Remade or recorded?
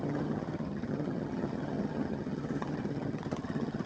remade